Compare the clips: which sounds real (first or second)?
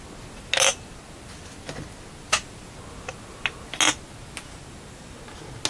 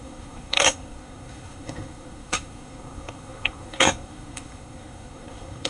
first